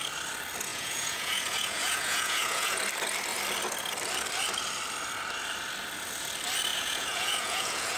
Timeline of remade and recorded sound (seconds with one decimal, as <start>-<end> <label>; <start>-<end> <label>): 0.0-0.7 recorded; 0.7-2.8 remade; 2.8-6.7 recorded; 6.7-8.0 remade